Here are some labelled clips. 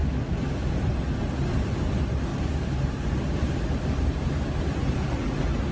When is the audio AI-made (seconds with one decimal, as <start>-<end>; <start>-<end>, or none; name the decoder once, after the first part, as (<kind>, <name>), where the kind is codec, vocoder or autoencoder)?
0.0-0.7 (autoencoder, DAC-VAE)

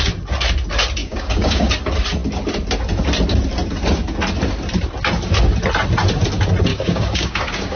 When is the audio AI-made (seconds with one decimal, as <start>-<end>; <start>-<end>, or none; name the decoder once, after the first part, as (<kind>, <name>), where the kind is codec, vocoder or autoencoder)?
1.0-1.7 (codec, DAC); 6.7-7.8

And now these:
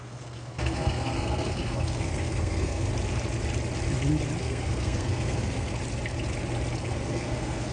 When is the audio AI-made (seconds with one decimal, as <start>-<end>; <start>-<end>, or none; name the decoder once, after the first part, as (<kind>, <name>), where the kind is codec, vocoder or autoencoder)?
0.0-2.9 (codec, SNAC); 4.4-5.7; 6.8-7.7